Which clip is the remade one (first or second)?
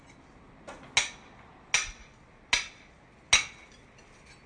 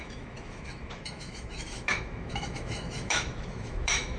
second